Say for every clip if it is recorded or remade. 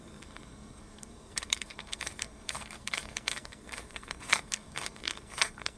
remade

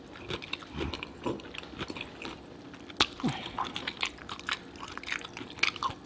recorded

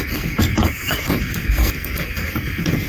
remade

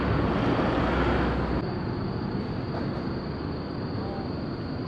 recorded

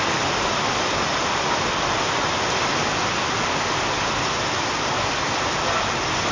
recorded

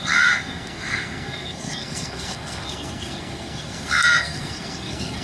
remade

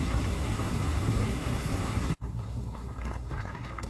remade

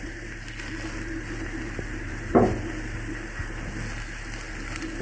recorded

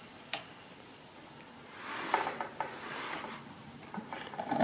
recorded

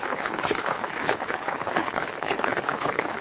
remade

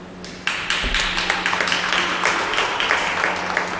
recorded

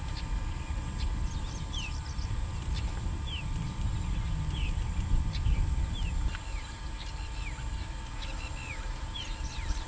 remade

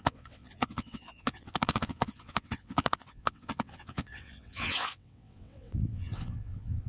remade